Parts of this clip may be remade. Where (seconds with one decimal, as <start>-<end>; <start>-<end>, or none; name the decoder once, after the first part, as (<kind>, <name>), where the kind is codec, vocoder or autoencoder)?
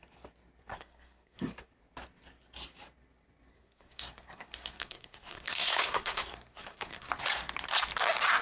0.7-1.7 (codec, SNAC); 3.5-7.1